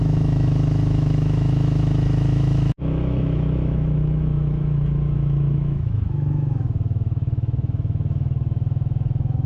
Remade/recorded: remade